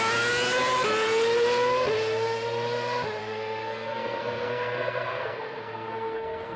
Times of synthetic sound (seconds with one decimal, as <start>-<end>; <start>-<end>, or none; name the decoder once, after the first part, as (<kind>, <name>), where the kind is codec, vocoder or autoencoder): 3.2-6.6 (codec, SNAC)